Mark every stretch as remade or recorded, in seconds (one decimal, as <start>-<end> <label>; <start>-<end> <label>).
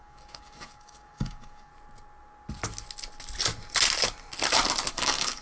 0.0-1.7 remade; 1.7-4.9 recorded; 4.9-5.4 remade